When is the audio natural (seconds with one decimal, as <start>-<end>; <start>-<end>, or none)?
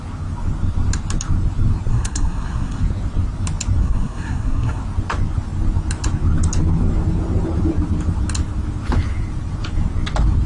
0.0-1.9; 2.8-3.8; 4.8-10.5